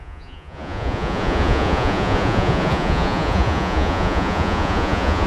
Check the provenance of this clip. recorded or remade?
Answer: remade